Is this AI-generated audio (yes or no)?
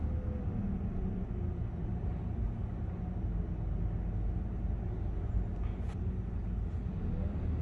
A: no